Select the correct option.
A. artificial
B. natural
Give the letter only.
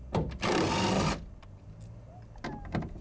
B